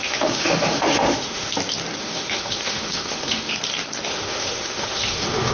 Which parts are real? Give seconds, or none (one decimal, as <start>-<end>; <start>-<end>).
1.5-2.0; 3.5-4.1